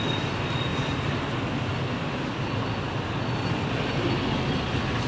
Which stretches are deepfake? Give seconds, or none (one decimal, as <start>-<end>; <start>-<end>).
none